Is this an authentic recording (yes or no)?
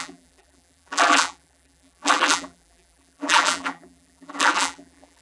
no